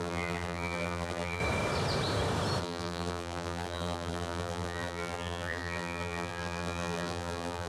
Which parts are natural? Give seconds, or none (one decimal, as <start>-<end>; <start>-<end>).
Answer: 1.4-2.6